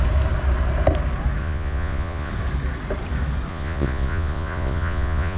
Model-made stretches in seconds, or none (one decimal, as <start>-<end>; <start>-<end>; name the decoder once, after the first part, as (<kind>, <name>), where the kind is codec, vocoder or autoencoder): 1.4-2.3 (vocoder, Vocos); 3.5-5.4